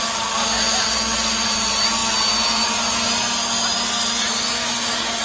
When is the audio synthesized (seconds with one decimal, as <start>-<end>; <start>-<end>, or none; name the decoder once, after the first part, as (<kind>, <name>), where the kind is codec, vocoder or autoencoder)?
none